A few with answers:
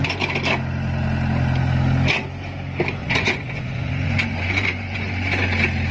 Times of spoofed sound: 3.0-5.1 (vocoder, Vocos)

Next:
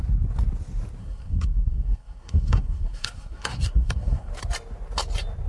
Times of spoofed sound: 1.0-4.3 (codec, SNAC)